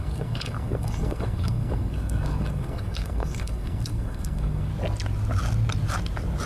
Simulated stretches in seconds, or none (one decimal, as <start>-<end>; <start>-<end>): 0.0-4.7